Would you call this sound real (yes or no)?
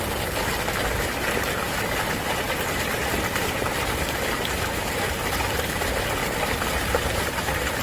yes